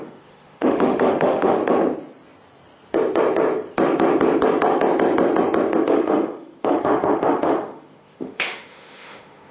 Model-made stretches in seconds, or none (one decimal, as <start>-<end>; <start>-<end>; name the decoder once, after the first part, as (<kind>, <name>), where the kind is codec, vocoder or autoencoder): 0.0-1.6 (autoencoder, DAC-VAE); 5.8-9.5